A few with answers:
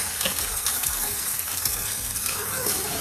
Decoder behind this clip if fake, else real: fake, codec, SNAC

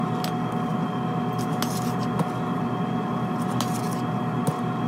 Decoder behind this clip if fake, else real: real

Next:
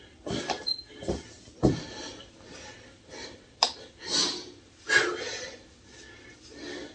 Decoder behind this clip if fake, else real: fake, vocoder, BigVGAN v2